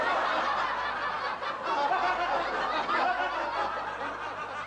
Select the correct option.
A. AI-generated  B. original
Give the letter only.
B